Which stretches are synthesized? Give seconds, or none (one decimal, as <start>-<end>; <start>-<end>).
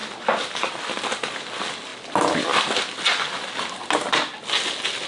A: none